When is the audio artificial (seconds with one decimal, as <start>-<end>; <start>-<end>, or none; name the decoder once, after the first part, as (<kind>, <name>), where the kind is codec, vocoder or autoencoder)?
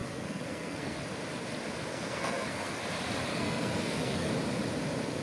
0.0-1.0 (codec, SNAC); 1.9-2.8; 3.3-4.3